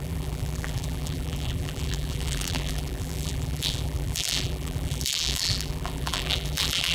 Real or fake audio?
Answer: fake